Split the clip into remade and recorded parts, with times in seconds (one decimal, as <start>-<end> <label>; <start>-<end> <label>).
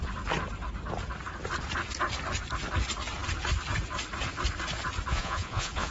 0.0-5.1 recorded; 5.1-5.9 remade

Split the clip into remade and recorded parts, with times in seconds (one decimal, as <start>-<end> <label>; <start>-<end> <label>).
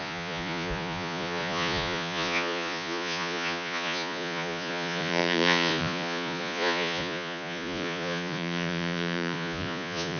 0.0-10.2 remade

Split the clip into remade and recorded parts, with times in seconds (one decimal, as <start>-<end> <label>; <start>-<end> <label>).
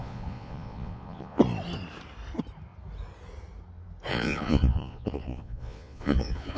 0.0-1.4 remade; 1.4-4.1 recorded; 4.1-6.6 remade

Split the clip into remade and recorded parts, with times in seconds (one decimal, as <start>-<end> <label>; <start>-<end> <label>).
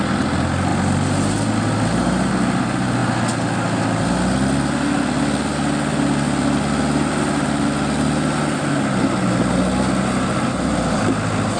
0.0-11.6 recorded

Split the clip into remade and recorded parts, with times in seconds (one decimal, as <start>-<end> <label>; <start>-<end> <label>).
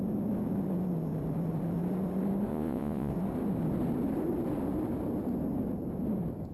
0.0-2.5 recorded; 2.5-3.1 remade; 3.1-6.5 recorded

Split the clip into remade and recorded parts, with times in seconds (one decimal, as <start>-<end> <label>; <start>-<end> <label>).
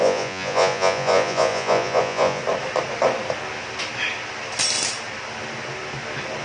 0.0-2.4 remade; 2.4-6.4 recorded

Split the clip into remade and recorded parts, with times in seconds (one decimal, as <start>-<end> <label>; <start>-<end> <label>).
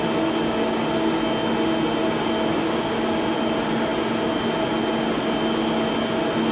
0.0-6.5 recorded